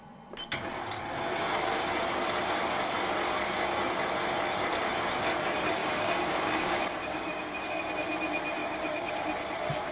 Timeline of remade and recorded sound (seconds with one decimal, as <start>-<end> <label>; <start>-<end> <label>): 0.0-5.8 recorded; 5.8-7.8 remade; 7.8-8.6 recorded; 8.6-9.1 remade; 9.1-9.9 recorded